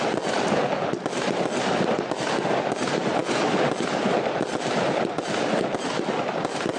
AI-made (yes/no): no